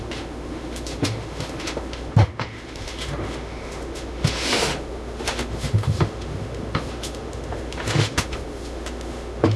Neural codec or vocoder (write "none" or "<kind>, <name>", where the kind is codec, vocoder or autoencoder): autoencoder, DAC-VAE